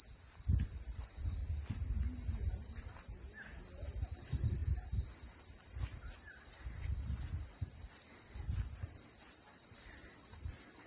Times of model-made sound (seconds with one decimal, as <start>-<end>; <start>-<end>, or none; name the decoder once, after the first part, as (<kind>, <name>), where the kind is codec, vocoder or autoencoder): 0.0-1.4 (vocoder, BigVGAN v2); 2.6-4.6; 5.4-10.9

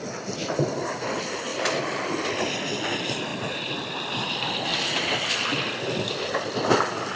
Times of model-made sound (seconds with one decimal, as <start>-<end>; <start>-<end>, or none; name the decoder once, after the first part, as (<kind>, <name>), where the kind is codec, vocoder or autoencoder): 0.4-1.0 (vocoder, BigVGAN v2); 1.5-2.1; 3.3-4.1

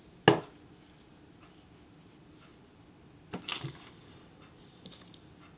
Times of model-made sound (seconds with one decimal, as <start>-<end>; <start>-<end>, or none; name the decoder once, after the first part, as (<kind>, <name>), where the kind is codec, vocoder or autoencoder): none